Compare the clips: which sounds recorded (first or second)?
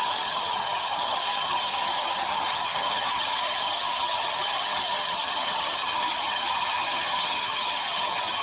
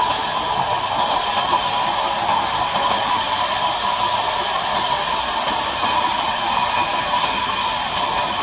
second